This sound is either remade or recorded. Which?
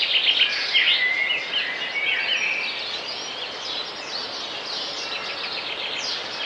recorded